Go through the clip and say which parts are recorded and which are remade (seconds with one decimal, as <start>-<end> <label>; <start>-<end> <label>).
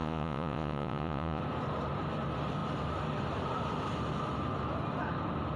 0.0-1.4 remade; 1.4-5.6 recorded